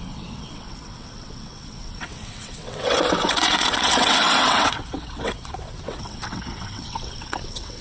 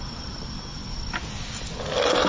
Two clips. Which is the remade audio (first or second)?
first